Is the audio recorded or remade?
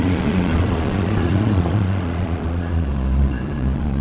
remade